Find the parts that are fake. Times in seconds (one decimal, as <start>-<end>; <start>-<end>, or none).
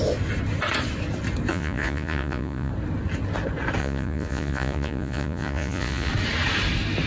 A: 1.5-2.7; 3.8-6.1